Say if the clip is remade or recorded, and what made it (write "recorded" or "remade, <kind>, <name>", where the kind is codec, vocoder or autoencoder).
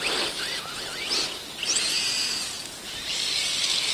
recorded